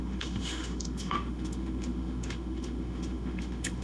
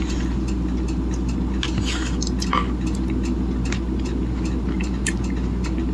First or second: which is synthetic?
first